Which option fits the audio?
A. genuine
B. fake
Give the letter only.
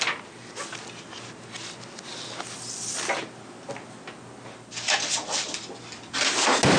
A